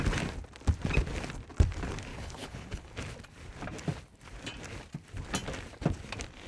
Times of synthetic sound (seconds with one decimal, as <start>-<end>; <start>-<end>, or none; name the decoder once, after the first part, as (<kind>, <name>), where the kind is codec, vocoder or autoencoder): 2.1-2.9 (codec, HILCodec)